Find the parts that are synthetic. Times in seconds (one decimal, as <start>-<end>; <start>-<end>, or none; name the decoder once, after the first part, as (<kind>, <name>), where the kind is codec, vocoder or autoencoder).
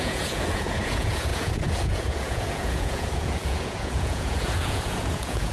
0.0-5.5 (vocoder, Vocos)